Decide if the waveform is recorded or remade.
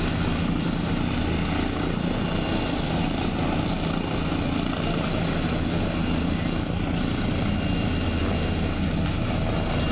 recorded